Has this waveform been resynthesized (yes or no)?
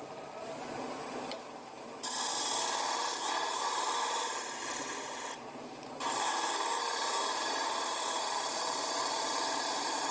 yes